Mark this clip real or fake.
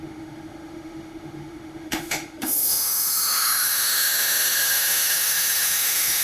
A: fake